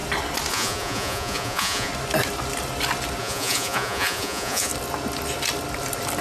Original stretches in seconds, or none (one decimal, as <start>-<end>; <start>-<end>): 0.0-0.5; 1.9-3.2; 4.7-6.2